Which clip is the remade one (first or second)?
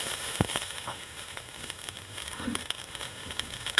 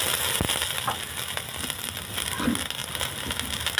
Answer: first